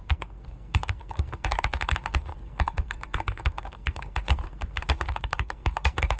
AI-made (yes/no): yes